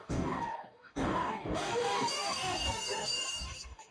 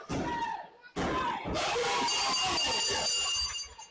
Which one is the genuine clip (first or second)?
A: second